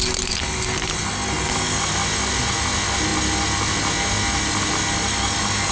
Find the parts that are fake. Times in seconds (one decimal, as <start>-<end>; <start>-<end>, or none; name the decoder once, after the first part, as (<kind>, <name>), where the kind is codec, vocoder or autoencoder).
none